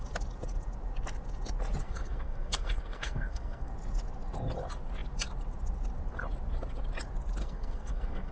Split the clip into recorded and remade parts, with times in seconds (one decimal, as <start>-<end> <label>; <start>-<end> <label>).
0.0-1.8 recorded; 1.8-3.7 remade; 3.7-7.4 recorded; 7.4-8.3 remade